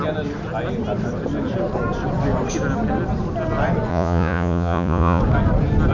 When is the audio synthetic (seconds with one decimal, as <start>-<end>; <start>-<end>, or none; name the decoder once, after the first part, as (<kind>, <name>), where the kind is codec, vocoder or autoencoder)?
3.9-5.2 (vocoder, Vocos)